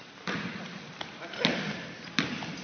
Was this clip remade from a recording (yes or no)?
no